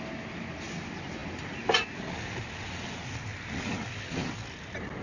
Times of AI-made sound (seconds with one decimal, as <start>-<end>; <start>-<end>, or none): none